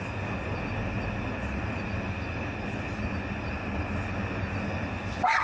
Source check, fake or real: real